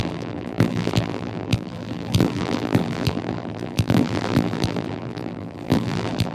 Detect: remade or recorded remade